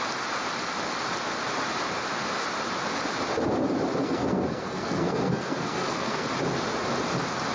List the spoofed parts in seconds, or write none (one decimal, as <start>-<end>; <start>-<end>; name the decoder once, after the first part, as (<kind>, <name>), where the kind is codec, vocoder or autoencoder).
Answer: 4.0-6.3 (codec, SNAC)